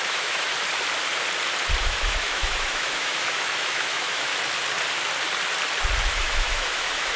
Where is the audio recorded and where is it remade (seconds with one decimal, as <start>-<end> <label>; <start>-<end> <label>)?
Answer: 0.0-0.5 remade; 0.5-1.8 recorded; 1.8-4.3 remade; 4.3-6.1 recorded; 6.1-7.2 remade